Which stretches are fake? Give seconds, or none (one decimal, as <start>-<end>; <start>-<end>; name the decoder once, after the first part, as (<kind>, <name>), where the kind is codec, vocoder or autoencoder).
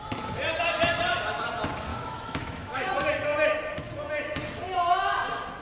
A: 1.9-2.9 (autoencoder, DAC-VAE)